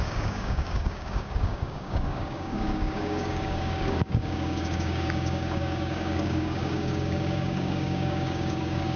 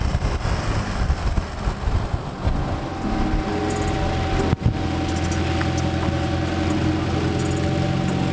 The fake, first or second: first